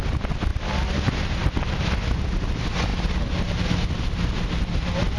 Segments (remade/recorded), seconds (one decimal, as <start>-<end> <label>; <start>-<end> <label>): 0.0-0.5 recorded; 0.5-1.8 remade; 1.8-5.2 recorded